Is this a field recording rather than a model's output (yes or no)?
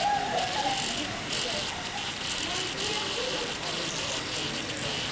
yes